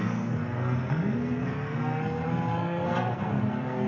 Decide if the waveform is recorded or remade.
remade